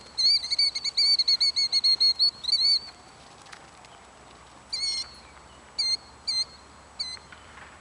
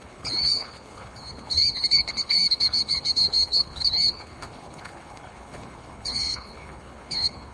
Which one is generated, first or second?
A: second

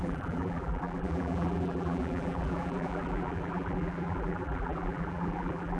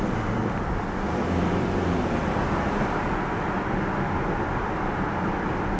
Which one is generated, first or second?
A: first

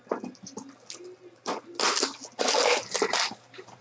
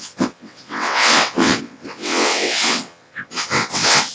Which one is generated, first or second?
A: second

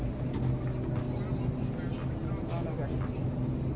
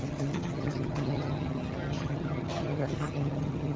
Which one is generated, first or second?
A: second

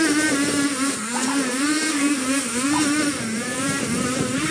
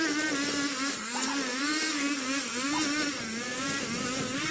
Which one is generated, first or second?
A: first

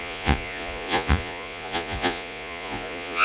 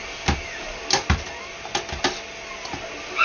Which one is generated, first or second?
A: first